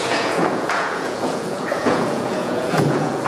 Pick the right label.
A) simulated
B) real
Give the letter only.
A